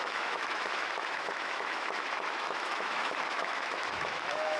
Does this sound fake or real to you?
fake